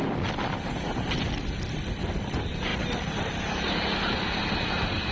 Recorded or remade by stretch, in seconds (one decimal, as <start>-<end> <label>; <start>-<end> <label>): 0.0-5.1 recorded